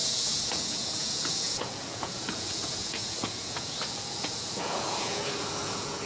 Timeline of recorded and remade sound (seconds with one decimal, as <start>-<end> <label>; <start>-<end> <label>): 0.0-6.1 remade